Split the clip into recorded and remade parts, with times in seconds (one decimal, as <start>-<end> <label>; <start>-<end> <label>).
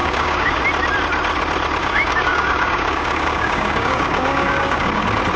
0.0-0.6 remade; 0.6-1.8 recorded; 1.8-5.0 remade; 5.0-5.4 recorded